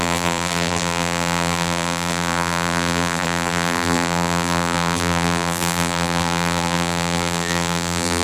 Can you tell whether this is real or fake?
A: fake